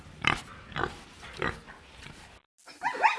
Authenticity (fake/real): real